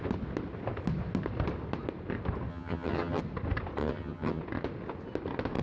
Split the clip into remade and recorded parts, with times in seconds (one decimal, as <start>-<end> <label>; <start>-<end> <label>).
0.0-2.5 recorded; 2.5-3.2 remade; 3.2-3.8 recorded; 3.8-4.4 remade; 4.4-5.6 recorded